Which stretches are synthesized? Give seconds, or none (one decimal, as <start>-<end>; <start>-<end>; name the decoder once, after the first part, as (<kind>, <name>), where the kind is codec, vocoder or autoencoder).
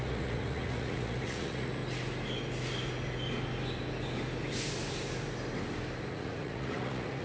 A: 0.0-1.8 (vocoder, Vocos); 6.1-7.2